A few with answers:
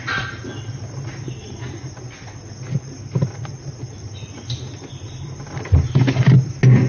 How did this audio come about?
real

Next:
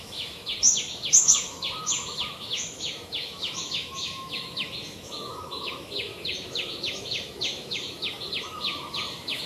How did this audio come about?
fake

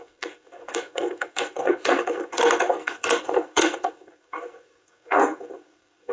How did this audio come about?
fake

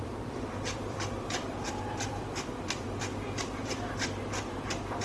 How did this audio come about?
fake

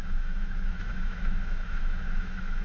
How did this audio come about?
fake